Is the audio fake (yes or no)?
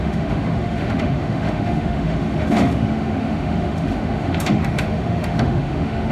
yes